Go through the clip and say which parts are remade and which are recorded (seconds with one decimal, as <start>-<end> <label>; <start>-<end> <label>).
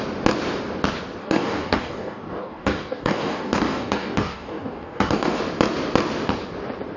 0.0-1.2 recorded; 1.2-5.4 remade; 5.4-7.0 recorded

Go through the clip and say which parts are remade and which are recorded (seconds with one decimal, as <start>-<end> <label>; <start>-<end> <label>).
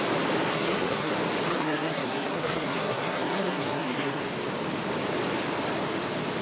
0.0-0.5 recorded; 0.5-1.1 remade; 1.1-1.5 recorded; 1.5-4.2 remade; 4.2-6.4 recorded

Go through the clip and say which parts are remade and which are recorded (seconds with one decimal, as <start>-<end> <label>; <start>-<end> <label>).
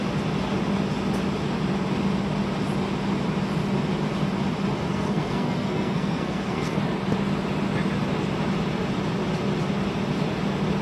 0.0-4.9 recorded; 4.9-6.8 remade; 6.8-10.8 recorded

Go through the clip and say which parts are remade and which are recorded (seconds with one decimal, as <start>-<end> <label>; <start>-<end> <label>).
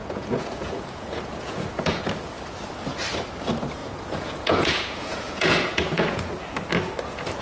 0.0-2.0 remade; 2.0-3.8 recorded; 3.8-6.3 remade; 6.3-7.4 recorded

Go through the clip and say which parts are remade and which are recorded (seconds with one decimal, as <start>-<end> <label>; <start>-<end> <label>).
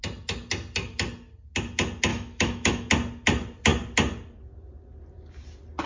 0.0-2.1 recorded; 2.1-2.9 remade; 2.9-5.9 recorded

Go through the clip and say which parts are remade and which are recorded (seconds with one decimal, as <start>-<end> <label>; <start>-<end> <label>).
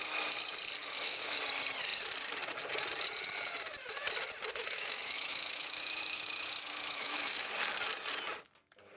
0.0-0.8 recorded; 0.8-1.4 remade; 1.4-4.5 recorded; 4.5-7.5 remade; 7.5-9.0 recorded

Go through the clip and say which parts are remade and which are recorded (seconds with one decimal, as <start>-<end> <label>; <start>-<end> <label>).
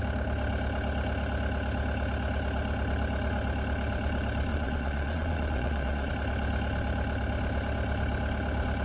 0.0-4.5 recorded; 4.5-6.1 remade; 6.1-8.8 recorded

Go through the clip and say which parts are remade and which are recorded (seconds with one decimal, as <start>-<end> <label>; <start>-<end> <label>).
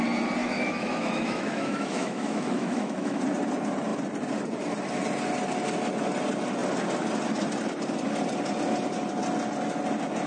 0.0-0.4 recorded; 0.4-3.2 remade; 3.2-10.3 recorded